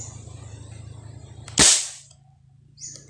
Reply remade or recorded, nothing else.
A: recorded